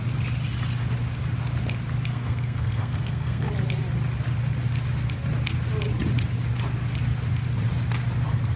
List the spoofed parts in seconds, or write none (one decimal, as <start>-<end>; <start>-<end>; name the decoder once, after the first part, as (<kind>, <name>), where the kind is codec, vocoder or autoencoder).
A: 2.1-3.5 (codec, SNAC)